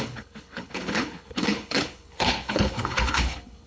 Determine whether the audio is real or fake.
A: fake